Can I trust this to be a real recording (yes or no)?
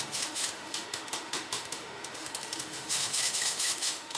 no